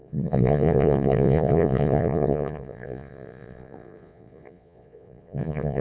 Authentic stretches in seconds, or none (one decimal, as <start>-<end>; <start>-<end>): none